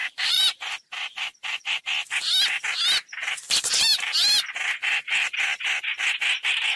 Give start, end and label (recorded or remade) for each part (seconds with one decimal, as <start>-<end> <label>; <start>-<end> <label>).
0.0-1.8 remade; 1.8-3.2 recorded; 3.2-4.1 remade; 4.1-6.8 recorded